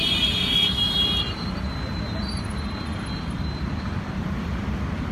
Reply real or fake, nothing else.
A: fake